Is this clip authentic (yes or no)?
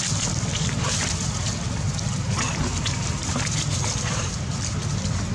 yes